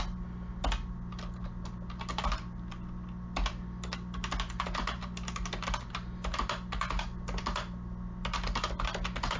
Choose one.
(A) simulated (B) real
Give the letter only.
B